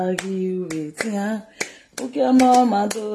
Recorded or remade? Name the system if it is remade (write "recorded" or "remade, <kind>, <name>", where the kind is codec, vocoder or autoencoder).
recorded